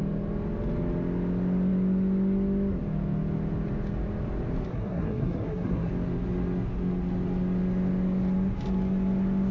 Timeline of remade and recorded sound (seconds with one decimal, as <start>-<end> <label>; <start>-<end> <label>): 0.0-4.7 recorded; 4.7-5.9 remade; 5.9-9.5 recorded